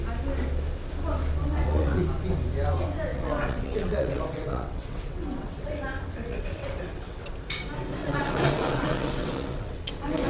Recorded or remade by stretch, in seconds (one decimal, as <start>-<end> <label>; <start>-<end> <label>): 0.0-1.4 recorded; 1.4-2.0 remade; 2.0-3.1 recorded; 3.1-5.8 remade; 5.8-6.3 recorded; 6.3-7.3 remade; 7.3-8.0 recorded; 8.0-10.3 remade